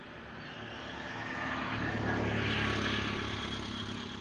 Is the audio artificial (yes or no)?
no